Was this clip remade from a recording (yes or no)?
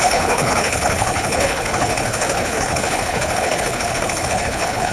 yes